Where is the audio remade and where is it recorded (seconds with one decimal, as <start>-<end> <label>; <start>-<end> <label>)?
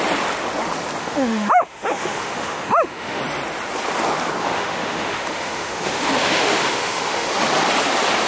0.0-1.0 recorded; 1.0-3.2 remade; 3.2-4.4 recorded; 4.4-7.3 remade; 7.3-8.3 recorded